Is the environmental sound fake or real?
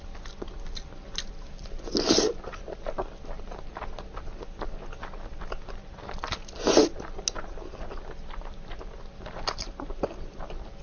real